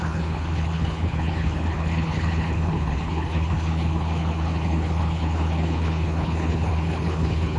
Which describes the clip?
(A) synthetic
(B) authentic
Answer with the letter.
A